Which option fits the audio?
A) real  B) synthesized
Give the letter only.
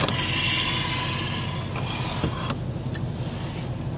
A